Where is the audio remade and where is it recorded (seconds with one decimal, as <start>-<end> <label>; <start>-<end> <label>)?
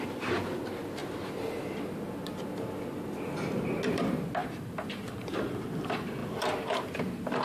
0.0-4.4 recorded; 4.4-5.4 remade; 5.4-7.4 recorded